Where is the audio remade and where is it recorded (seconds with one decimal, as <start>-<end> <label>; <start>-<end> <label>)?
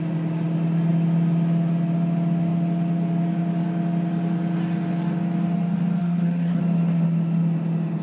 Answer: 0.0-6.0 recorded; 6.0-6.6 remade; 6.6-8.0 recorded